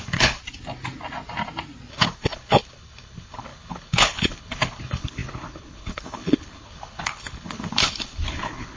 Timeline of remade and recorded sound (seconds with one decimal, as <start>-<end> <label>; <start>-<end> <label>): 0.0-0.4 remade; 0.4-1.9 recorded; 1.9-8.8 remade